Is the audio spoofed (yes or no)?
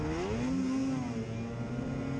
no